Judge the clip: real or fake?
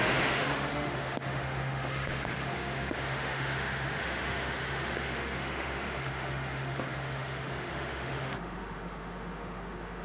fake